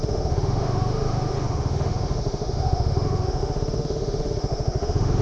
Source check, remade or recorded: remade